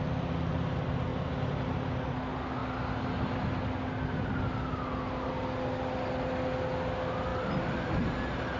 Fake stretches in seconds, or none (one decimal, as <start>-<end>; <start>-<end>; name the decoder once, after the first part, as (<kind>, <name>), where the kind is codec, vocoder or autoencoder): 7.3-7.9 (vocoder, BigVGAN v2)

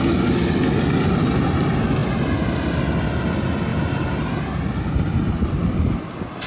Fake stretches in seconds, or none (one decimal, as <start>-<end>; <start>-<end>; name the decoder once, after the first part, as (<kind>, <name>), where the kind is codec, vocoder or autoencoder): 3.7-5.8 (vocoder, BigVGAN v2)

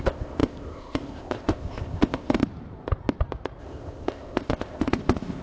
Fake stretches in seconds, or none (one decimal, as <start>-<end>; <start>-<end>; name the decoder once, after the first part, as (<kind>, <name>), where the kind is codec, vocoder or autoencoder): 0.0-2.4 (codec, ZipCodec); 3.6-5.4

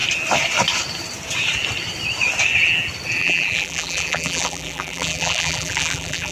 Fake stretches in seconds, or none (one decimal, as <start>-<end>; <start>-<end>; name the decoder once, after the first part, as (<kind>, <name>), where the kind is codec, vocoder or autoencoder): 3.2-6.3 (vocoder, BigVGAN v2)

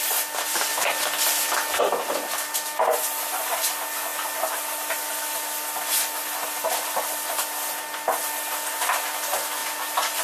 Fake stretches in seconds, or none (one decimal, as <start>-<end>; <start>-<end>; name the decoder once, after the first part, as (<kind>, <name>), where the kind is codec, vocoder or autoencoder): 0.7-1.8 (vocoder, BigVGAN v2); 4.1-8.2; 9.6-10.2